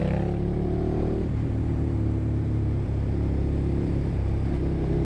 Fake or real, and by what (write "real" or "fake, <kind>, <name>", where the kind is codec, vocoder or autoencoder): fake, vocoder, BigVGAN v2